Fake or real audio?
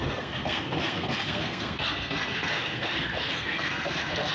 fake